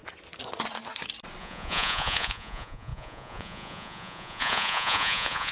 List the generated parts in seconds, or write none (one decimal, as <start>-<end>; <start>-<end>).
1.4-5.5